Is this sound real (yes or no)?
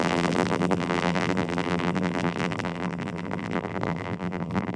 no